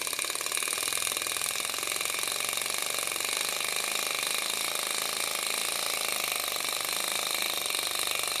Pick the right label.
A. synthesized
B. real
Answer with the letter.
B